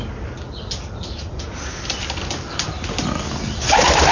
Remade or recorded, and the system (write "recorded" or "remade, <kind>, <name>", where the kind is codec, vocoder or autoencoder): recorded